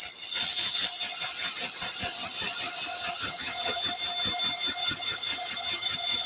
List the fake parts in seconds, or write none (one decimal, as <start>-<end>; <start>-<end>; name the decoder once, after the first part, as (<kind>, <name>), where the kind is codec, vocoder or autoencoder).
2.9-3.9 (vocoder, HiFi-GAN); 4.8-6.3